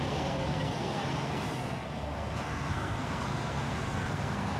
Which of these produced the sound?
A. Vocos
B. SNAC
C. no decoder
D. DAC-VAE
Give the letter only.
B